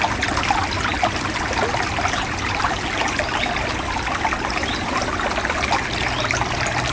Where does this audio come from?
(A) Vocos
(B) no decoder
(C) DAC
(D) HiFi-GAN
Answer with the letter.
B